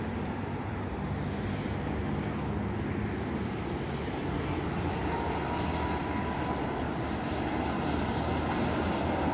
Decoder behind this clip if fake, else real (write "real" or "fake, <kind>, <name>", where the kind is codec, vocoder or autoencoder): real